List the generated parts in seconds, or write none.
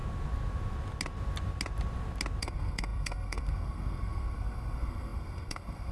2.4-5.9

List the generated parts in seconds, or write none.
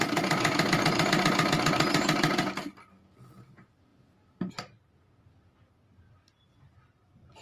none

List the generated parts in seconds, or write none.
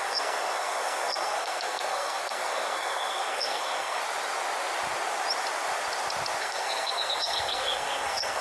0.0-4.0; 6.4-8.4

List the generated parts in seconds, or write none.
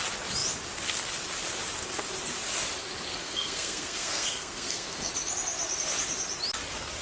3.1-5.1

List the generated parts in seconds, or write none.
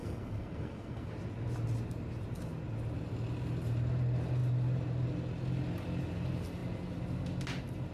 0.0-1.1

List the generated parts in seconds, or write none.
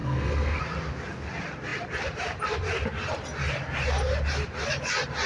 0.0-0.6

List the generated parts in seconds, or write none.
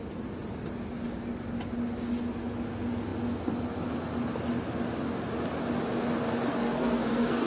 6.5-7.5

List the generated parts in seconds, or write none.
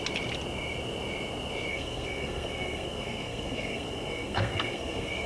1.7-5.3